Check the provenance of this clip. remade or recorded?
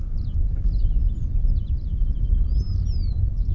recorded